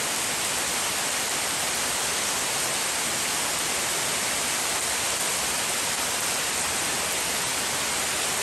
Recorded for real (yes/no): yes